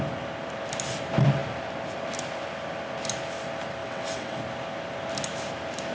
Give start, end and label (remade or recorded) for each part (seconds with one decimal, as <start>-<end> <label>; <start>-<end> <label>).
0.0-3.8 recorded; 3.8-4.4 remade; 4.4-5.9 recorded